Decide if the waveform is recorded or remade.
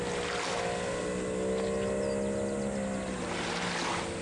recorded